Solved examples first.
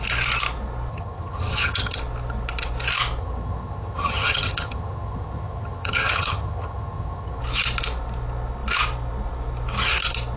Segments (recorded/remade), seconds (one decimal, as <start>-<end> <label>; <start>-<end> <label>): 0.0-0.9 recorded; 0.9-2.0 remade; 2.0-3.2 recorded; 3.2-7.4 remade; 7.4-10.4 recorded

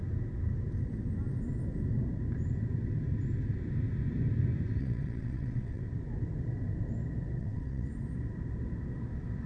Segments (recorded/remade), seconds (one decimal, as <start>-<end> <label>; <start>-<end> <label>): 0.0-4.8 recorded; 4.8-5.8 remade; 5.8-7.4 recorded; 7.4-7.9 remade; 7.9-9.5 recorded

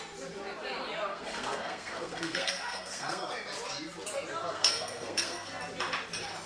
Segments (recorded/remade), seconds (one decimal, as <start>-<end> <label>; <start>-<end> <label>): 0.0-1.1 recorded; 1.1-3.3 remade; 3.3-4.5 recorded; 4.5-5.6 remade; 5.6-6.5 recorded

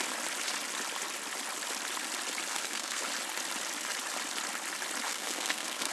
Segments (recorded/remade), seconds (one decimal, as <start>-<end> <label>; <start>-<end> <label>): 0.0-2.5 recorded; 2.5-3.0 remade; 3.0-5.1 recorded; 5.1-5.9 remade

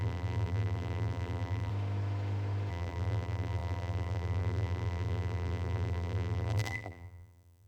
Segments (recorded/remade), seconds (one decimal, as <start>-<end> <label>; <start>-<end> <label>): 0.0-1.7 remade; 1.7-2.7 recorded; 2.7-7.7 remade

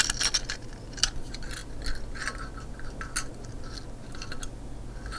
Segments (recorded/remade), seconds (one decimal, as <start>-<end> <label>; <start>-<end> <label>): 0.0-5.2 recorded

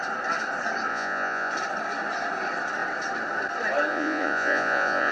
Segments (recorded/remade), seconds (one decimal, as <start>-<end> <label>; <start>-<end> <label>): 0.0-0.9 recorded; 0.9-1.5 remade; 1.5-3.9 recorded; 3.9-5.1 remade

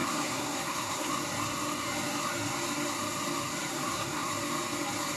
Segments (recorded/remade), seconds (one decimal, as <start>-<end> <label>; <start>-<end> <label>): 0.0-1.1 remade; 1.1-3.7 recorded; 3.7-4.3 remade; 4.3-5.2 recorded